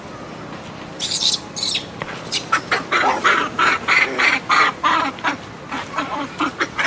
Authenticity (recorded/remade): remade